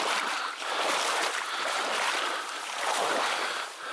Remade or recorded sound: recorded